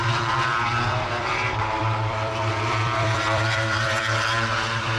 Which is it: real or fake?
fake